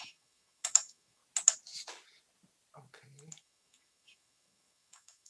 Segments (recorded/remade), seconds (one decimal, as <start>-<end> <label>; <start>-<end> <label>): 0.0-1.2 remade; 1.2-3.4 recorded; 3.4-5.3 remade

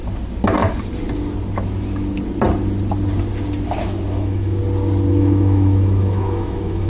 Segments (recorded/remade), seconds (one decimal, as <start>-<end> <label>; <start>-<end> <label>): 0.0-4.1 recorded; 4.1-4.6 remade; 4.6-5.1 recorded; 5.1-6.9 remade

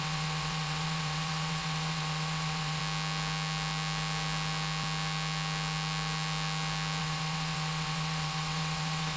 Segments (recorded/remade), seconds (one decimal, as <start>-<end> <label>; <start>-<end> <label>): 0.0-2.8 remade; 2.8-7.0 recorded; 7.0-9.2 remade